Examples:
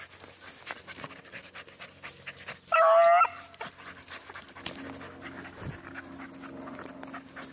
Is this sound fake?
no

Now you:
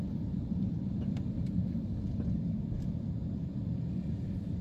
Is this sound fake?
yes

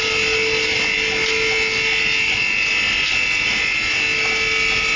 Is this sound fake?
no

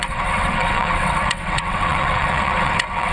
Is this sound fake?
yes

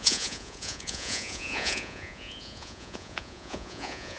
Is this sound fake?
yes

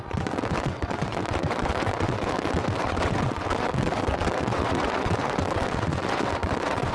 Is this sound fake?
yes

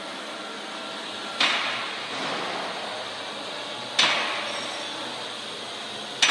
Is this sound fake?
no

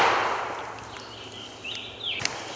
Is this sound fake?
no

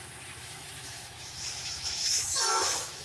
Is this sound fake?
yes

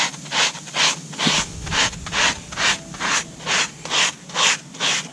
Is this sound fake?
no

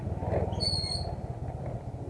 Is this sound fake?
no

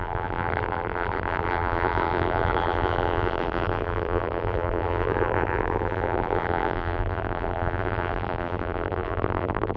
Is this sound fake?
yes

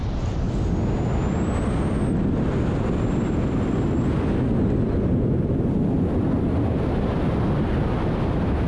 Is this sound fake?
no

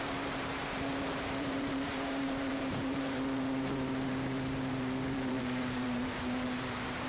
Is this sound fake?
yes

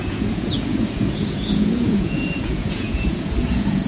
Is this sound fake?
yes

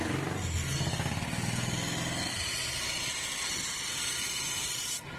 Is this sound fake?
no